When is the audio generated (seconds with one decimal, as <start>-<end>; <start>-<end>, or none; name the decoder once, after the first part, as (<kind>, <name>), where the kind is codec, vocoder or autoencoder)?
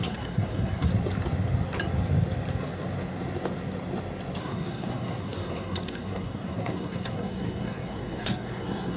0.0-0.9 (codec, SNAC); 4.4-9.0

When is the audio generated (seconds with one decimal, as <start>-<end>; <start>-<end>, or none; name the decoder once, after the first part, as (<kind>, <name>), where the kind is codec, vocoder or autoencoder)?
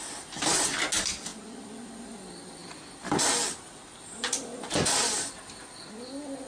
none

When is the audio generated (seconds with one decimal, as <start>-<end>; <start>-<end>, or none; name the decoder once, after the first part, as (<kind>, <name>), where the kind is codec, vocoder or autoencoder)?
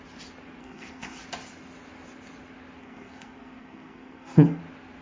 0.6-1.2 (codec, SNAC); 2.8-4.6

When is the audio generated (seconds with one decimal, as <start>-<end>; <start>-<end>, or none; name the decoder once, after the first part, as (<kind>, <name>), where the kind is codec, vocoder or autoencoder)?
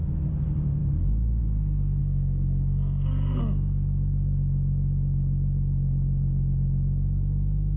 2.0-3.4 (codec, SNAC)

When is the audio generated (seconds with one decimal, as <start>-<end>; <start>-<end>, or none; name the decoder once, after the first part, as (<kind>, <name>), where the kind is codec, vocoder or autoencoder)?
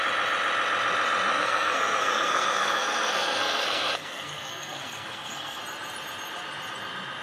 1.3-5.6 (codec, SNAC)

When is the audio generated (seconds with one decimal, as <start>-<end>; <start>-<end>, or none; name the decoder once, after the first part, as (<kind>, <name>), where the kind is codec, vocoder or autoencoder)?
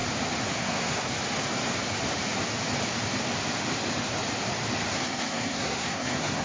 0.6-1.1 (codec, SNAC); 4.9-6.4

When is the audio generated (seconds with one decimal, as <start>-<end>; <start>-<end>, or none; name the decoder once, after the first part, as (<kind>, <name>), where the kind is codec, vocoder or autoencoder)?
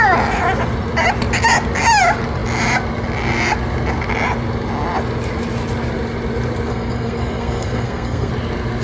6.7-8.3 (codec, SNAC)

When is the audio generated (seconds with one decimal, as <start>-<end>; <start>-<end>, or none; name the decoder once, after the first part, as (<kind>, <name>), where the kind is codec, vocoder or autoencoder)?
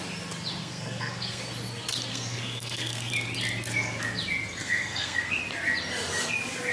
0.6-1.4 (codec, SNAC); 2.1-3.1; 4.6-5.4